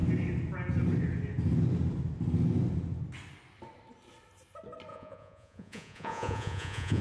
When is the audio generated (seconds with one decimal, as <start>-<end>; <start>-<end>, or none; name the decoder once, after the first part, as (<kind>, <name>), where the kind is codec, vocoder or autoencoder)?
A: 4.9-7.0 (vocoder, Vocos)

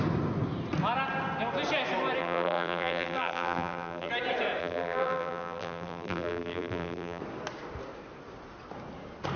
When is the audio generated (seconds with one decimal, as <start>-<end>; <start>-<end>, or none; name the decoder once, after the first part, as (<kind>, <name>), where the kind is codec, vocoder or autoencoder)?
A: 2.2-4.1 (vocoder, BigVGAN v2); 4.6-7.2

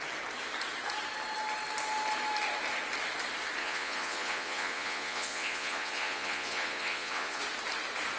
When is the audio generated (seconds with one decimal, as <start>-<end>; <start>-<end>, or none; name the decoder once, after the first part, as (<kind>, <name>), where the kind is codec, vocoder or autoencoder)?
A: 3.6-7.4 (vocoder, Vocos)